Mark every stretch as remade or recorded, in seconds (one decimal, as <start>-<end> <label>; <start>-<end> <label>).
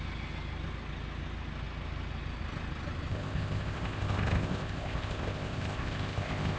0.0-3.1 recorded; 3.1-6.6 remade